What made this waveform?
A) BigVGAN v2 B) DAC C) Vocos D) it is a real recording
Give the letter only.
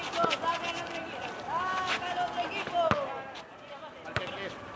D